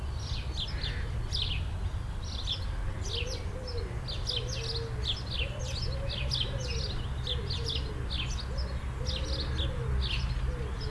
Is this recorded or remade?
recorded